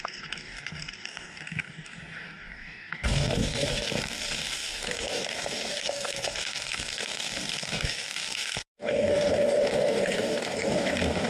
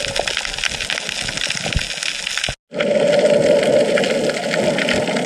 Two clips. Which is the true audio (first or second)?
second